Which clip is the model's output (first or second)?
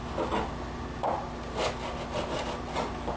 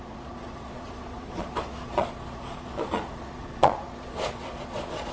second